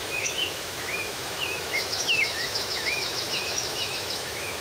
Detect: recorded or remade remade